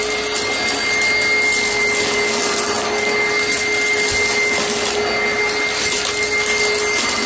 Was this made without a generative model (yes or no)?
yes